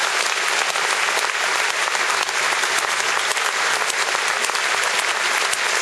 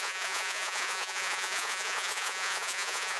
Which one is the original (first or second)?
first